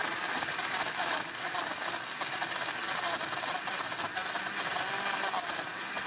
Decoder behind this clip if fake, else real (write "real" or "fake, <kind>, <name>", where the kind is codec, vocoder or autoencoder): real